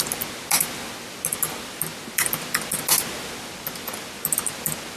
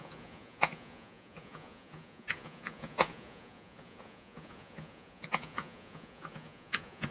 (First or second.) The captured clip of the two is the first